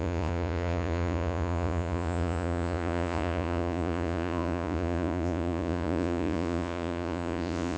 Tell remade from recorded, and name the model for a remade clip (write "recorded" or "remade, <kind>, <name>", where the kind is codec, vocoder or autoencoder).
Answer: remade, vocoder, Vocos